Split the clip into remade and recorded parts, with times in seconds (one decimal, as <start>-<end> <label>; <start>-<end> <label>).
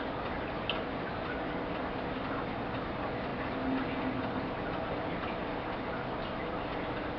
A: 0.0-7.2 recorded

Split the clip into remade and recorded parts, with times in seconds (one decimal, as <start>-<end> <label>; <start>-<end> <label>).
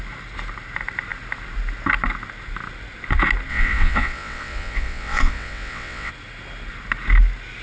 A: 0.0-3.5 recorded; 3.5-6.1 remade; 6.1-7.6 recorded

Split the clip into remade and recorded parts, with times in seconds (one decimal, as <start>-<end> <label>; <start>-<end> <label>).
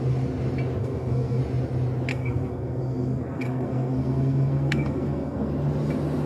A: 0.0-0.8 recorded; 0.8-1.4 remade; 1.4-2.1 recorded; 2.1-5.5 remade; 5.5-6.3 recorded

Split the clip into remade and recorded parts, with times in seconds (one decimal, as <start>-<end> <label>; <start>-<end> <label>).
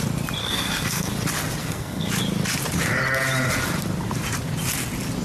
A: 0.0-0.4 recorded; 0.4-1.1 remade; 1.1-1.6 recorded; 1.6-2.1 remade; 2.1-5.2 recorded